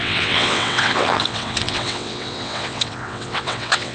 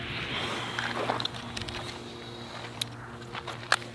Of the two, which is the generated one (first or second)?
first